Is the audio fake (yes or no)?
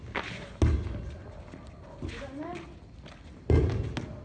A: no